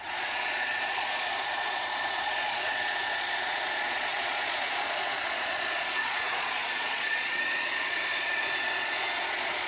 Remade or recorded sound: remade